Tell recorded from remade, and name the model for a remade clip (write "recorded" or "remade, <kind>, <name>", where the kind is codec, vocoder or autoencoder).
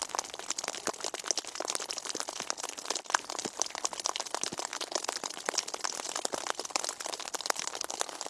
recorded